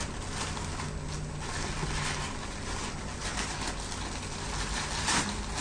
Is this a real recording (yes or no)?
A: yes